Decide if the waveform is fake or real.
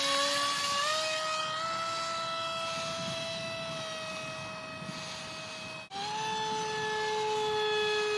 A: real